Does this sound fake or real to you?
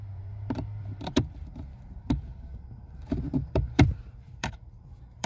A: fake